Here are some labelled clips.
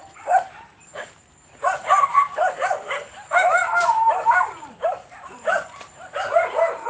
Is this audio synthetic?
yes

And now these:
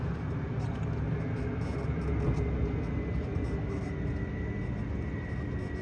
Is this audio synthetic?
no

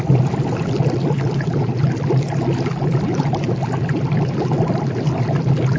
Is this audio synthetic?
no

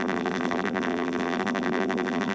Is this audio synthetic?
yes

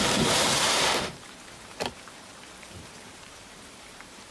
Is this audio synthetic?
yes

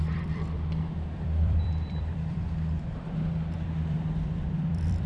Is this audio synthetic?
yes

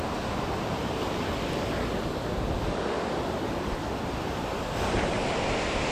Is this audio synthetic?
no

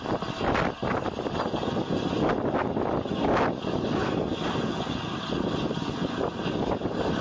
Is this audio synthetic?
no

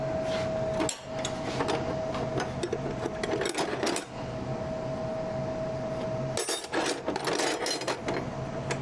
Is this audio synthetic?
no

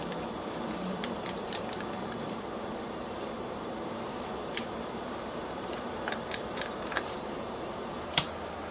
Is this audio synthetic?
yes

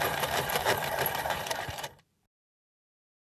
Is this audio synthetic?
yes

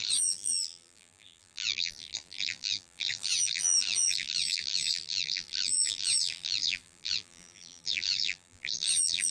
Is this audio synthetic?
yes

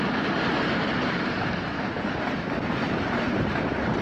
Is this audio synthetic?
yes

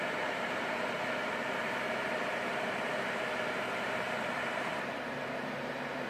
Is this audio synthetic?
yes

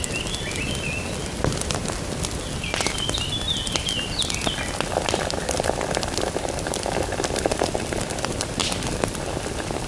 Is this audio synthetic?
yes